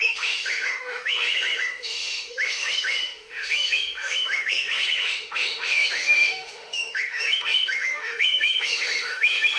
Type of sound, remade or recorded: remade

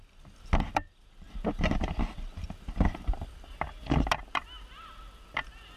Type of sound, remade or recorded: recorded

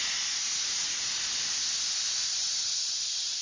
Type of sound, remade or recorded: recorded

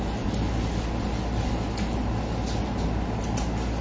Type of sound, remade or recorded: recorded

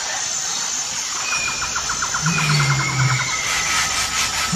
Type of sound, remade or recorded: recorded